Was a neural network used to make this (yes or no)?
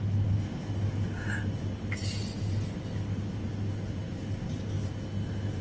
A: no